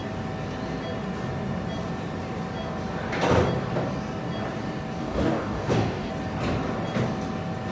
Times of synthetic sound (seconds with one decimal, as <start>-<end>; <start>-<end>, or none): 5.0-6.1